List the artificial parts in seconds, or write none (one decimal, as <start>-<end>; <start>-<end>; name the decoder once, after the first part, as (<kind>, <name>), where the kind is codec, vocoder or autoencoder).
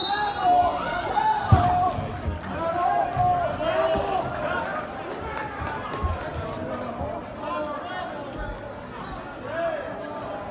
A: 6.3-7.2 (vocoder, BigVGAN v2)